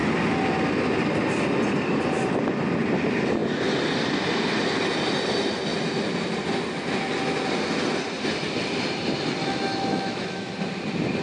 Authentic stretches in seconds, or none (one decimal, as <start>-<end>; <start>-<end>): 0.0-9.4; 10.5-11.2